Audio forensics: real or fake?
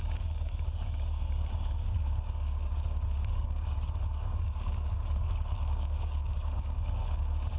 fake